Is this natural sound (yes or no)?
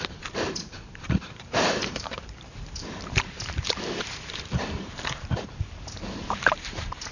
no